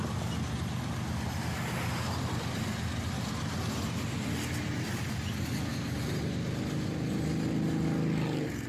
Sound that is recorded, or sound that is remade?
recorded